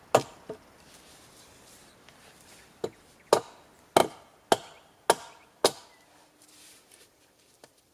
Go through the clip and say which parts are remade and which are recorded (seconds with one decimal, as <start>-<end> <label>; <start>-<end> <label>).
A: 0.0-7.9 recorded

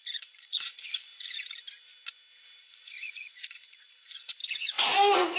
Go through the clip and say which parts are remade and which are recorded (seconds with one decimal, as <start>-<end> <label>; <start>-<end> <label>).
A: 0.0-1.1 remade; 1.1-2.6 recorded; 2.6-5.4 remade

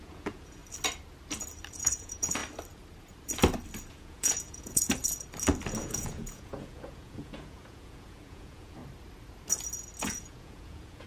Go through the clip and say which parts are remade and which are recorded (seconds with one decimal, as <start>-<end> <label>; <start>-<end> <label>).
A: 0.0-0.6 remade; 0.6-1.7 recorded; 1.7-2.4 remade; 2.4-3.9 recorded; 3.9-5.0 remade; 5.0-5.8 recorded; 5.8-8.8 remade; 8.8-10.0 recorded; 10.0-11.1 remade

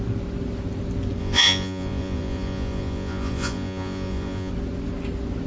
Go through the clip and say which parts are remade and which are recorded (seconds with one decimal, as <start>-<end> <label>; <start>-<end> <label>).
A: 0.0-1.2 recorded; 1.2-4.5 remade; 4.5-5.5 recorded